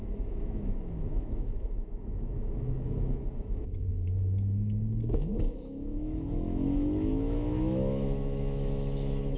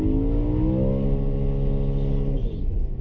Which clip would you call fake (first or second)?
first